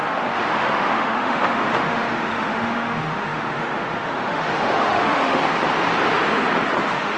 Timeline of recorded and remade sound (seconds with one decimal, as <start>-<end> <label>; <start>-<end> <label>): 0.0-5.4 remade; 5.4-6.8 recorded; 6.8-7.2 remade